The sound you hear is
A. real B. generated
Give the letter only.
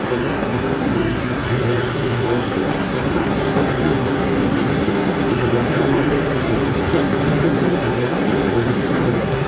B